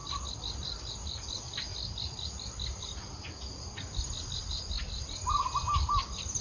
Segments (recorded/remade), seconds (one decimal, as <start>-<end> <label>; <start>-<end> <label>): 0.0-6.4 recorded